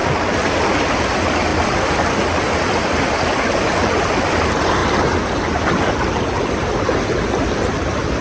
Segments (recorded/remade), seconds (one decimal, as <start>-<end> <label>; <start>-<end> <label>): 0.0-1.5 recorded; 1.5-3.1 remade; 3.1-8.2 recorded